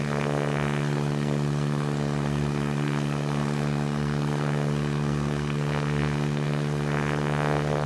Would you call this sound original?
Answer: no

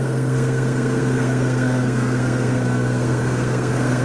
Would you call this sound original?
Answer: no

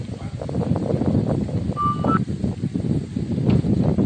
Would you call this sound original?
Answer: yes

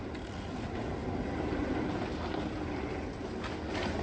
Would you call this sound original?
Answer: yes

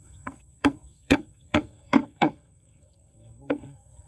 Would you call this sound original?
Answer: no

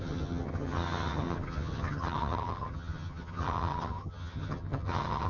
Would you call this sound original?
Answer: no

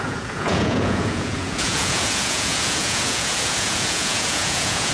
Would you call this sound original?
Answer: no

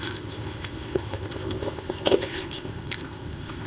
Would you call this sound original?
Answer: no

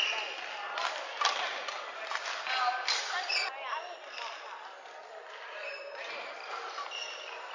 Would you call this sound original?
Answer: yes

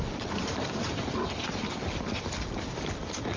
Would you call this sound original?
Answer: yes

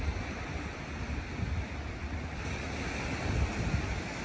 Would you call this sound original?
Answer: yes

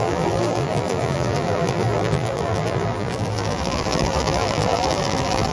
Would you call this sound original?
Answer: no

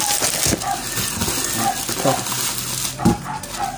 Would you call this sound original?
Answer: yes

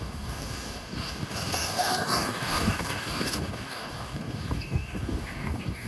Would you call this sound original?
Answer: no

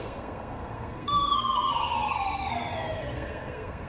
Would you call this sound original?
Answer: no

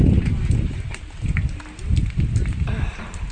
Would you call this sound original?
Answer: yes